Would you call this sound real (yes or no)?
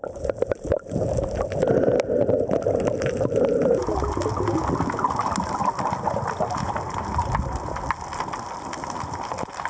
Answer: yes